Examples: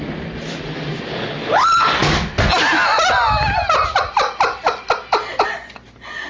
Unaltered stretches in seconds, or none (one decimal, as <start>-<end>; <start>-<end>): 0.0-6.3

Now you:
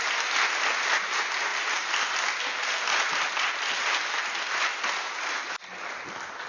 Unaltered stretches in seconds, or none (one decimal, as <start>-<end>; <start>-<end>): 0.0-6.5

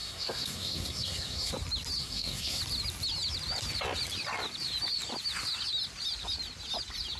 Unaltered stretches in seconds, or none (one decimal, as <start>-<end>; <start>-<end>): 1.5-2.0; 2.6-7.2

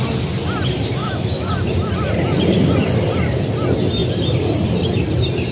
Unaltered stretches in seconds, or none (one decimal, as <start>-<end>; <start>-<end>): 0.0-1.0; 1.5-5.5